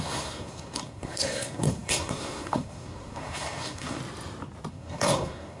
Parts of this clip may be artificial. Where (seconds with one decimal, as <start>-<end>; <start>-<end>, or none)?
0.0-4.0; 4.7-5.6